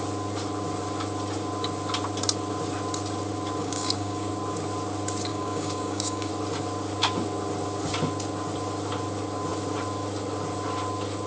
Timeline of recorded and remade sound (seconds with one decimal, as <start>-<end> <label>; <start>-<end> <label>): 0.0-3.6 recorded; 3.6-4.3 remade; 4.3-5.3 recorded; 5.3-6.3 remade; 6.3-11.3 recorded